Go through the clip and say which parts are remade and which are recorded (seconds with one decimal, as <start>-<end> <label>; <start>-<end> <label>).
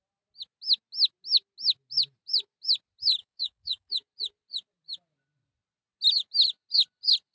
0.0-3.2 recorded; 3.2-3.9 remade; 3.9-7.3 recorded